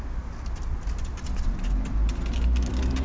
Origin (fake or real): real